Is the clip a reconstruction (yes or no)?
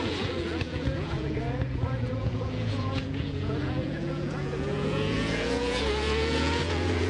yes